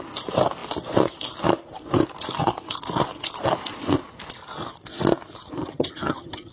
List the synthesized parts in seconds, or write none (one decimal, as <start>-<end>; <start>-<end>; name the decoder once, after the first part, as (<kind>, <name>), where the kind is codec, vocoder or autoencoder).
5.6-6.5 (vocoder, HiFi-GAN)